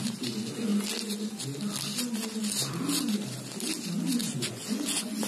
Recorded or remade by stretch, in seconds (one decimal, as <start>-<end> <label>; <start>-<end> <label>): 0.0-4.2 recorded; 4.2-5.3 remade